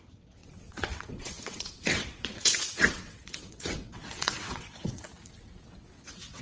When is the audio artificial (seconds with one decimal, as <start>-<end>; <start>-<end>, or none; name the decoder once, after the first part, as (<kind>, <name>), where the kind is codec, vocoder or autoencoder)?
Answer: 0.0-5.1 (vocoder, WaveNeXt); 5.7-6.4